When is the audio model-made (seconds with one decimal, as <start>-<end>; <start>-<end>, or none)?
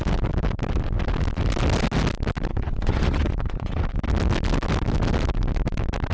2.5-3.8